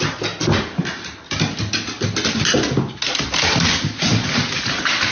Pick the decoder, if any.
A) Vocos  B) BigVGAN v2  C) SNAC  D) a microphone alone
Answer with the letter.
D